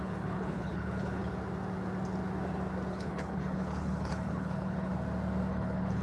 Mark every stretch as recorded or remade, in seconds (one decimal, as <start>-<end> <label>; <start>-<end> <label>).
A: 0.0-1.2 remade; 1.2-2.9 recorded; 2.9-4.9 remade; 4.9-5.5 recorded; 5.5-6.0 remade